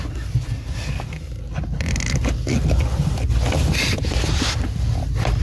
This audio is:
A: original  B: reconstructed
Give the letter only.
A